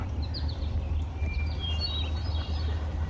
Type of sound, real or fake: fake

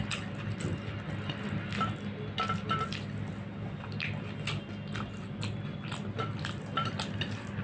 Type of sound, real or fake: real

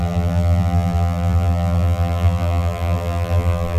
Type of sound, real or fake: fake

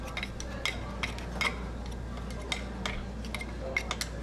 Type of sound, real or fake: real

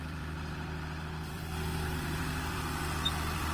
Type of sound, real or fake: fake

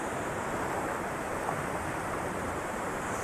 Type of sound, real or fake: fake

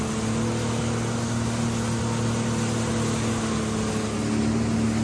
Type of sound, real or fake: real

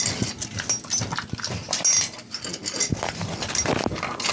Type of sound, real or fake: real